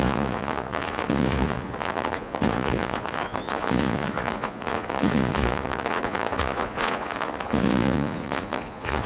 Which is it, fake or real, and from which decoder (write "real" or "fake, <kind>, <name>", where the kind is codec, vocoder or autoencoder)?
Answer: fake, vocoder, Vocos